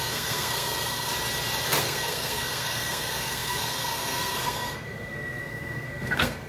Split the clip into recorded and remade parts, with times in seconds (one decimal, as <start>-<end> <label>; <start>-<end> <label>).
0.0-1.1 remade; 1.1-1.8 recorded; 1.8-6.5 remade